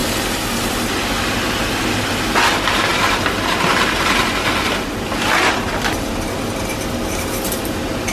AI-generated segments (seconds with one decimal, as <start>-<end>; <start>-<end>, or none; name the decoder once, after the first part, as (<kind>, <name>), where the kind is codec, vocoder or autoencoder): none